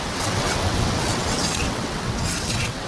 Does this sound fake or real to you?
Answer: fake